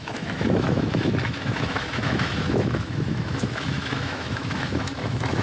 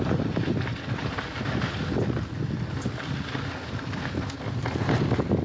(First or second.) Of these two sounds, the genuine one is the second